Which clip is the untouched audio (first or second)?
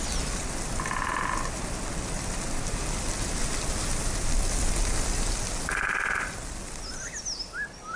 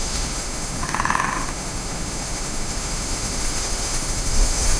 first